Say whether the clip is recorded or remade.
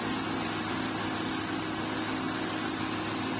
recorded